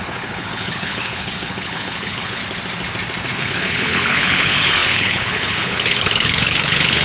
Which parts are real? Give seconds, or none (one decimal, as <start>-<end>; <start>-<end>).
2.4-3.4